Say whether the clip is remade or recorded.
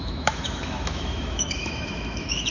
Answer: remade